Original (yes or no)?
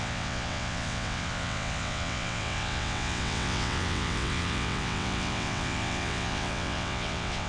no